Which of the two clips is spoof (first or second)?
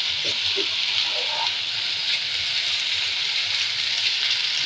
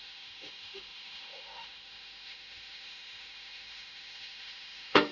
second